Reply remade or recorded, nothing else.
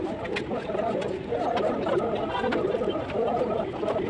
recorded